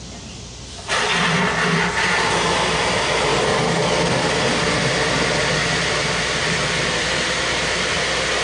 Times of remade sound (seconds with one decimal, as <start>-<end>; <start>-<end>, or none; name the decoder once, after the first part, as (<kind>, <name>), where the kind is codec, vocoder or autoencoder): 3.3-4.3 (codec, DAC)